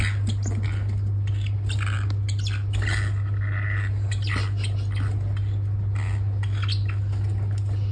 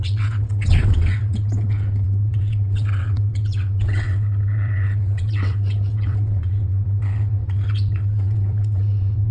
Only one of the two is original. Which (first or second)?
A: first